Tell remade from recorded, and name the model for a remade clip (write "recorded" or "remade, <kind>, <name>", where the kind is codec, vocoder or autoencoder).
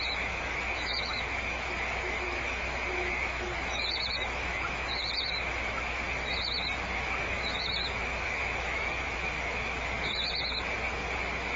remade, autoencoder, DAC-VAE